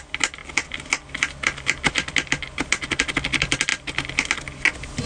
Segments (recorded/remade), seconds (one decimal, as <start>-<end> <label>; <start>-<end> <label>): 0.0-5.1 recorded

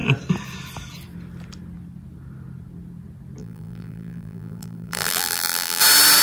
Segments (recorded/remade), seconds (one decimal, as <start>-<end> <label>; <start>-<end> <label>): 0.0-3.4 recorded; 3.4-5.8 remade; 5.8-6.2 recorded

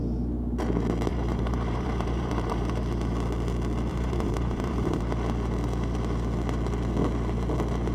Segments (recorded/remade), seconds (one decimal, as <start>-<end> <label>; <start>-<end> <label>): 0.0-1.1 recorded; 1.1-2.7 remade; 2.7-3.9 recorded; 3.9-5.0 remade; 5.0-7.9 recorded

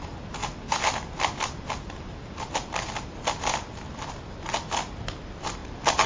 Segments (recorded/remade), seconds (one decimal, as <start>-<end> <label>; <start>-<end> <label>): 0.0-6.1 recorded

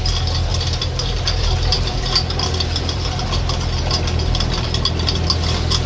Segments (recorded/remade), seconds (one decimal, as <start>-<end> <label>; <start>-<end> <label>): 0.0-0.5 recorded; 0.5-3.8 remade; 3.8-5.9 recorded